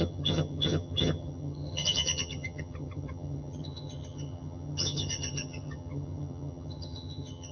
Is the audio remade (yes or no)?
yes